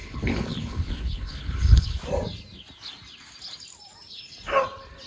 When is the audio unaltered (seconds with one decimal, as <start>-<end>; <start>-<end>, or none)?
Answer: 2.0-5.1